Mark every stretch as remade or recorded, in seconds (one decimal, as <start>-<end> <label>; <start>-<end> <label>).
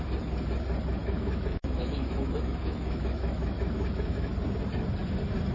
0.0-1.0 recorded; 1.0-4.3 remade; 4.3-5.5 recorded